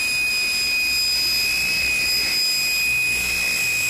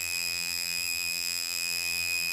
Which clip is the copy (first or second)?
second